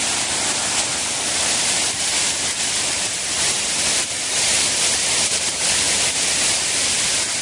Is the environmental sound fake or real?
fake